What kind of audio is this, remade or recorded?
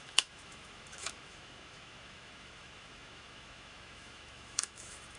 remade